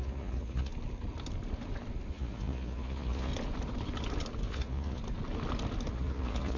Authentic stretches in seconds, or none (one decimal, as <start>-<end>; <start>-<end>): 0.7-2.1; 3.3-4.5; 5.0-5.9